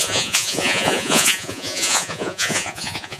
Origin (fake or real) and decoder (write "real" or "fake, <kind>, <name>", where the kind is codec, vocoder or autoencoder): fake, vocoder, Vocos